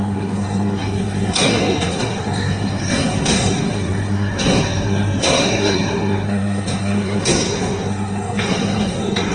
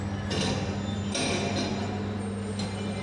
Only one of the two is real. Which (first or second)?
second